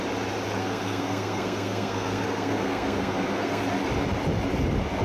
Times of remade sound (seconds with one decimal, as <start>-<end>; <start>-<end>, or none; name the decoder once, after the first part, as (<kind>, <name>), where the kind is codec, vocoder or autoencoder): 0.6-3.6 (codec, SNAC)